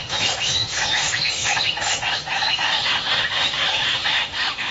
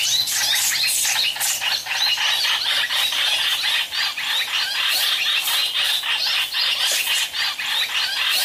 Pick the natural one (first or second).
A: second